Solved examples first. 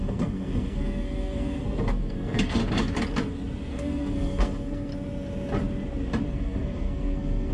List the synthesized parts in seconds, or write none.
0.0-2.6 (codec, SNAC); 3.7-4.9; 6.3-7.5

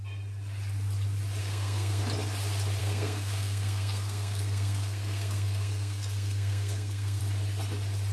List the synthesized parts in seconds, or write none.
1.4-2.0 (codec, SNAC); 2.8-7.2

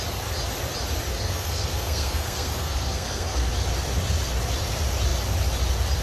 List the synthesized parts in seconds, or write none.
1.1-3.5 (codec, SNAC)

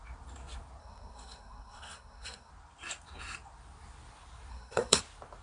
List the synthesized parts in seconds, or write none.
0.8-2.5 (codec, SNAC); 4.5-5.0